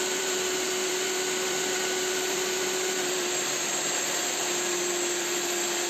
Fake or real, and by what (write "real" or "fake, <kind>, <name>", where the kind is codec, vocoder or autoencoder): fake, vocoder, BigVGAN v2